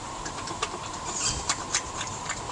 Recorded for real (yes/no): no